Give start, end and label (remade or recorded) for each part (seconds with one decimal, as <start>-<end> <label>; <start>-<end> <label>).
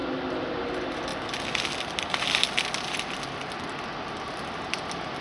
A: 0.0-5.2 recorded